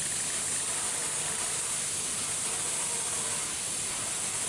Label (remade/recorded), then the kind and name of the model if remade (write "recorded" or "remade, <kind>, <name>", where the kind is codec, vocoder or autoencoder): recorded